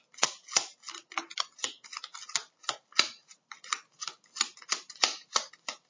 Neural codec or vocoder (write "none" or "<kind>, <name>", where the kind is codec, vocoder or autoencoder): none